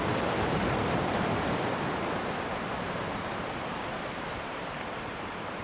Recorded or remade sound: remade